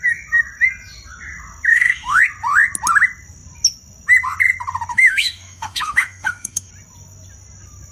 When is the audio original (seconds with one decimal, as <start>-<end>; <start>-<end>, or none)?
0.0-1.7; 2.2-4.9; 6.7-7.9